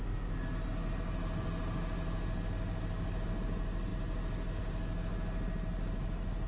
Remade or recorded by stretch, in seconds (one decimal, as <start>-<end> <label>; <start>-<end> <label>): 0.0-6.5 recorded